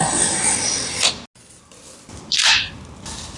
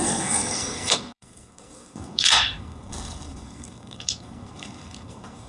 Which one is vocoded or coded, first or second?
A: second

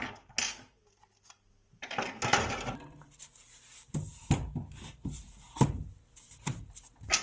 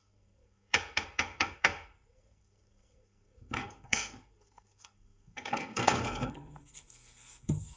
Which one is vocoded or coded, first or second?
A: second